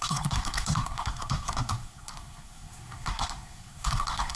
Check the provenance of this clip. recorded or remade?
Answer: remade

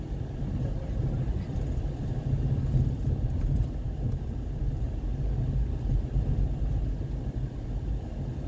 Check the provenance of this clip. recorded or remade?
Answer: recorded